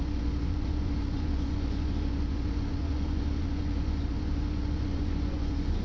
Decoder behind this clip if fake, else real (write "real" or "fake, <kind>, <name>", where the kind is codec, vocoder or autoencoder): fake, vocoder, Vocos